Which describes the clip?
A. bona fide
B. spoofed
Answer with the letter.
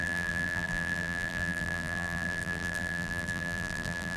B